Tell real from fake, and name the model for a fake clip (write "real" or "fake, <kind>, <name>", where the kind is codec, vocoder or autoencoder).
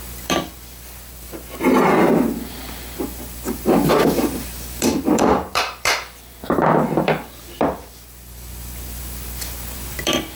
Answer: fake, vocoder, BigVGAN v2